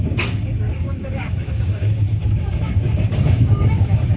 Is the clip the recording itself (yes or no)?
no